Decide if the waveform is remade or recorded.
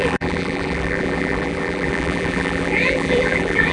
remade